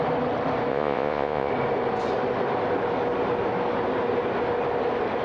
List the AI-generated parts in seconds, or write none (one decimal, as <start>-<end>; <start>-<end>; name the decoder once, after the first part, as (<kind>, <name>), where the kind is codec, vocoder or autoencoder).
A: 0.7-1.5 (vocoder, Vocos)